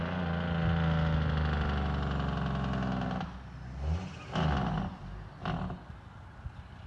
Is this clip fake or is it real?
real